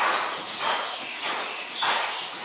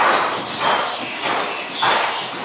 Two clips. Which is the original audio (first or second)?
second